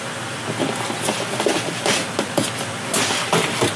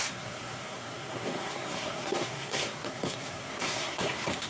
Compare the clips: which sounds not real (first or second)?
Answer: second